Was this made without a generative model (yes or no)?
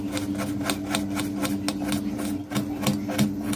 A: yes